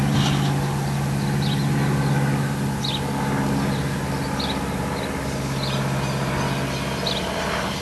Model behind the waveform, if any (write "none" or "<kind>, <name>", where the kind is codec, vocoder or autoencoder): none